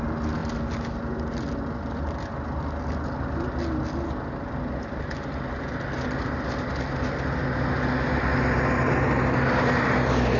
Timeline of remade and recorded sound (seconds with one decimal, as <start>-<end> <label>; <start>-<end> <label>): 0.0-10.4 recorded